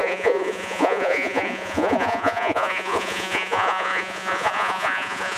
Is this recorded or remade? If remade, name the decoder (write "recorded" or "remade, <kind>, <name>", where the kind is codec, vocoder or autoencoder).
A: remade, vocoder, Vocos